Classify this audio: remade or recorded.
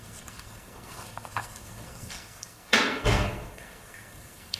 remade